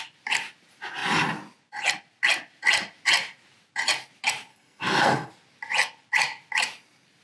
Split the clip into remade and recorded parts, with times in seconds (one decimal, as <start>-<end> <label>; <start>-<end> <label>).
0.0-4.5 recorded; 4.5-5.3 remade; 5.3-7.2 recorded